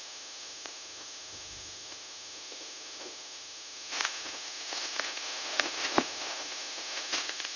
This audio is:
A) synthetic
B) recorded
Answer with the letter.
A